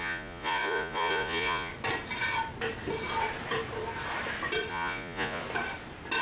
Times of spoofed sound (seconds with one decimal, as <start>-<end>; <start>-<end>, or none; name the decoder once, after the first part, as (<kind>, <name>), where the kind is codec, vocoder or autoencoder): 0.0-1.7 (vocoder, Vocos); 4.7-5.4